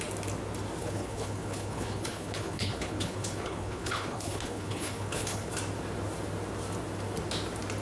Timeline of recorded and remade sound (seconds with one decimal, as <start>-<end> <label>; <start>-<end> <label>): 0.0-0.8 recorded; 0.8-5.5 remade; 5.5-7.8 recorded

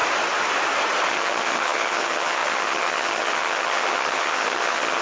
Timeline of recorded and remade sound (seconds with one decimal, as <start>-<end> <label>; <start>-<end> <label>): 0.0-1.1 recorded; 1.1-5.0 remade

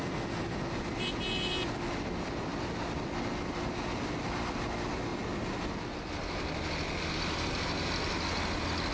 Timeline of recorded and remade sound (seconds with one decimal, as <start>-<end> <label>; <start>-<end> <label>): 0.0-8.9 recorded

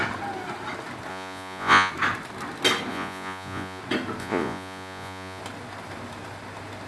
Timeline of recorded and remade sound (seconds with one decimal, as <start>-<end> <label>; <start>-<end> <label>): 0.0-1.1 recorded; 1.1-1.9 remade; 1.9-2.9 recorded; 2.9-3.8 remade; 3.8-4.2 recorded; 4.2-5.4 remade; 5.4-6.9 recorded

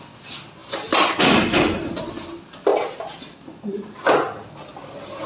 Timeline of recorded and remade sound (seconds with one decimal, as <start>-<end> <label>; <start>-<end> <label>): 0.0-5.3 recorded

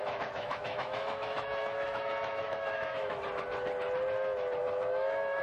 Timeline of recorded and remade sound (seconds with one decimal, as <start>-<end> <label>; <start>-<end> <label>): 0.0-3.2 remade; 3.2-4.6 recorded; 4.6-5.4 remade